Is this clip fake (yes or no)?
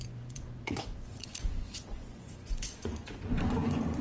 yes